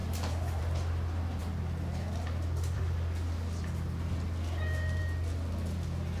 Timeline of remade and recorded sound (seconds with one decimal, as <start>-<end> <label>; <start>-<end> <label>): 0.0-0.6 remade; 0.6-1.4 recorded; 1.4-5.0 remade; 5.0-6.2 recorded